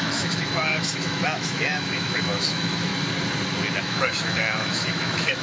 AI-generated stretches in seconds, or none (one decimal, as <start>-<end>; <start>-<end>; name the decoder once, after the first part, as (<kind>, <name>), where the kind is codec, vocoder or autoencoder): 0.0-2.9 (autoencoder, DAC-VAE); 3.8-5.4